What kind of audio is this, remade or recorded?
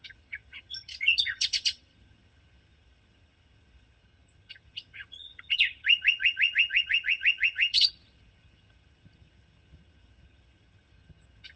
remade